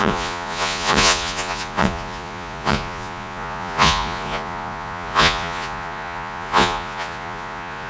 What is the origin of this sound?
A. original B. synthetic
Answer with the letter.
B